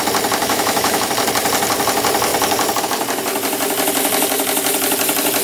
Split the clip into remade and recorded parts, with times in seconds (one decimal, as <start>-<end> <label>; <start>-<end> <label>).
0.0-0.4 recorded; 0.4-1.1 remade; 1.1-5.4 recorded